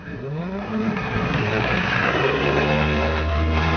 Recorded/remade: remade